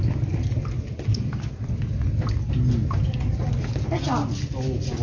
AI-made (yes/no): no